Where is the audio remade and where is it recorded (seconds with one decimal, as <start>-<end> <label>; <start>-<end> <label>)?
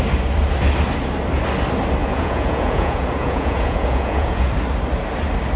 0.0-2.0 recorded; 2.0-4.5 remade; 4.5-5.6 recorded